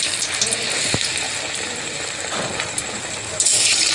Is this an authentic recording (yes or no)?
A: yes